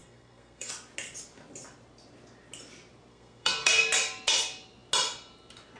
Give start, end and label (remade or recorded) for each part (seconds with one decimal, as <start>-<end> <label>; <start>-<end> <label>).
0.0-0.7 remade; 0.7-3.1 recorded; 3.1-3.8 remade; 3.8-5.8 recorded